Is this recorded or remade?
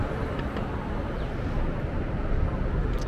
recorded